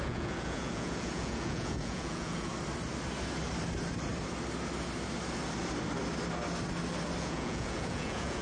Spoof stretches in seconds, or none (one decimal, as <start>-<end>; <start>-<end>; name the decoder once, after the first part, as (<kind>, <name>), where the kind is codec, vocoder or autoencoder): 0.0-2.5 (vocoder, Vocos); 7.2-8.4